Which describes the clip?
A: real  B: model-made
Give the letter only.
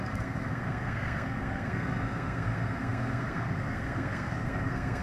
B